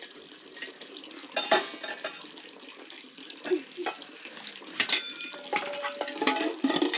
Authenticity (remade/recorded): recorded